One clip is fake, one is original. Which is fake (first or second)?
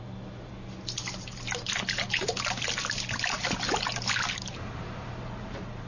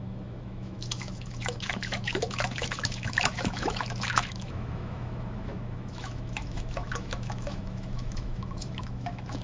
second